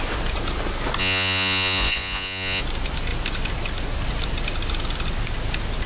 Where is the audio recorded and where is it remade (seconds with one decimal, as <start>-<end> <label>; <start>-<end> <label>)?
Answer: 0.0-1.0 recorded; 1.0-2.6 remade; 2.6-5.9 recorded